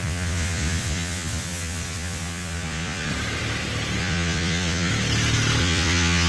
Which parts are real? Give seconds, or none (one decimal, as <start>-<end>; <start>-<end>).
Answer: 3.1-4.0; 4.9-5.6